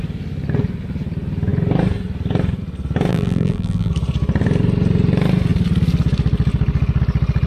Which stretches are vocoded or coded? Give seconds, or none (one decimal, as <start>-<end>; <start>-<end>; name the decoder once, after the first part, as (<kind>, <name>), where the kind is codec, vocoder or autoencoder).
3.1-3.9 (vocoder, BigVGAN v2)